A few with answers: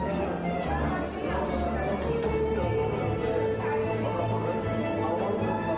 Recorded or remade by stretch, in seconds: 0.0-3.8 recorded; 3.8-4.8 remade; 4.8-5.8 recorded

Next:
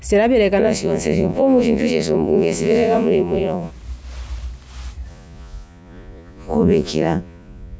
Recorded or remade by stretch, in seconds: 0.0-0.6 recorded; 0.6-3.7 remade; 3.7-5.1 recorded; 5.1-7.8 remade

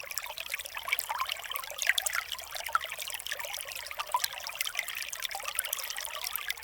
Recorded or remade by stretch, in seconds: 0.0-2.0 remade; 2.0-6.6 recorded

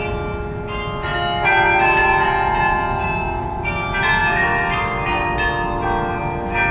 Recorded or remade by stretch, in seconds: 0.0-6.7 recorded

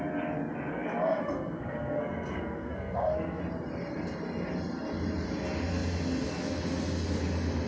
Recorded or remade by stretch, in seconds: 0.0-0.7 recorded; 0.7-3.4 remade; 3.4-7.7 recorded

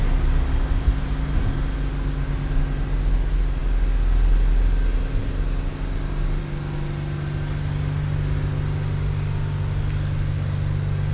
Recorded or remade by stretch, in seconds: 0.0-11.1 recorded

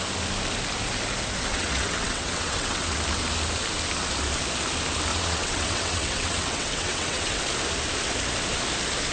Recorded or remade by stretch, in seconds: 0.0-1.5 recorded; 1.5-3.0 remade; 3.0-5.1 recorded; 5.1-7.4 remade; 7.4-9.1 recorded